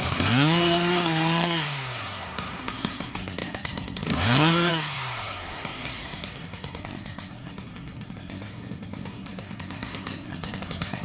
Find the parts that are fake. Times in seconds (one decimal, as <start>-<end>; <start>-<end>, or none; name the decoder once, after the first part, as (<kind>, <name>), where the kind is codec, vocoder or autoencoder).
0.0-11.0 (codec, SNAC)

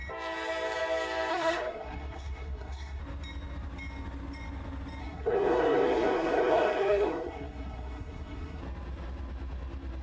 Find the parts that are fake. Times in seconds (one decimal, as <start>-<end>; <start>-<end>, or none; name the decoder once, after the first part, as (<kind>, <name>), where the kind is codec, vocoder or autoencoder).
1.3-3.0 (codec, SNAC); 5.0-8.6

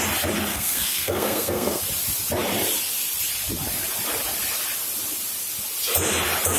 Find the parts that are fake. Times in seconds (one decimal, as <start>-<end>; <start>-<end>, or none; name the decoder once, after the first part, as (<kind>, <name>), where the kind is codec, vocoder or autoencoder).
0.5-1.8 (codec, SNAC)

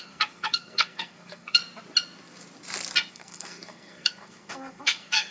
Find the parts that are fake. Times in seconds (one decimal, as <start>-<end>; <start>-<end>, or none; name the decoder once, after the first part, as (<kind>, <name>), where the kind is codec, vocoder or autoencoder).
0.0-1.6 (codec, SNAC); 3.1-5.3